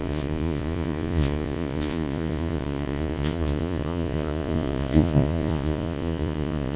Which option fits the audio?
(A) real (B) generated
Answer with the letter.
B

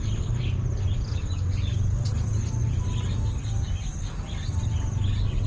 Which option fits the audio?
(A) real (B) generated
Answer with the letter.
A